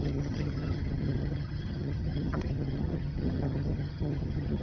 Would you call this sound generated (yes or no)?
yes